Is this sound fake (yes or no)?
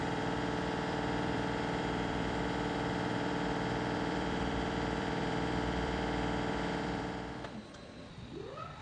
yes